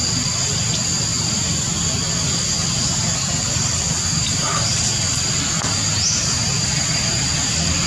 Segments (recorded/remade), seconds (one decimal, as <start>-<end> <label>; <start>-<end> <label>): 0.0-7.9 recorded